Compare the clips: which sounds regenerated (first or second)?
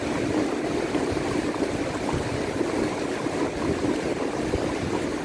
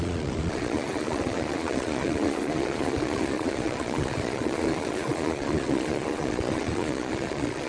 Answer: second